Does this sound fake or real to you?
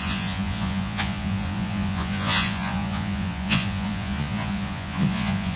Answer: fake